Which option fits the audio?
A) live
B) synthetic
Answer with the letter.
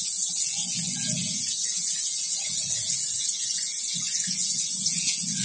B